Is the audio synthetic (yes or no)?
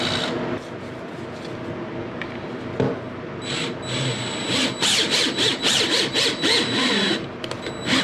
no